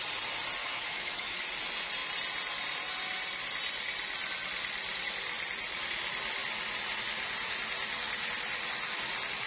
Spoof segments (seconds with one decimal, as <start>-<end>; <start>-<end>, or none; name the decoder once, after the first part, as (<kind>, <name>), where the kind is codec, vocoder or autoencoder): 0.6-1.4 (autoencoder, DAC-VAE)